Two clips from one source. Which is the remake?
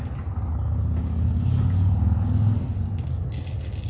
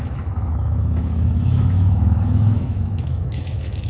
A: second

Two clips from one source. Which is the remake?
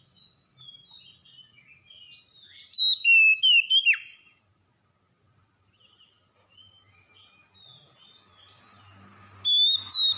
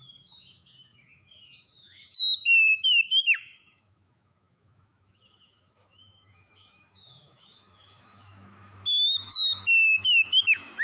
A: second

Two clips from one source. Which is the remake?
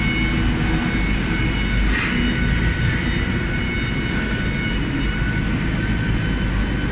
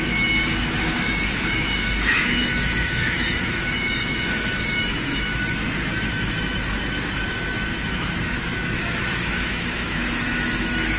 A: second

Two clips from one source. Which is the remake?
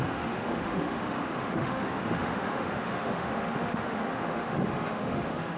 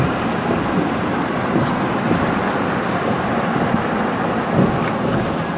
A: first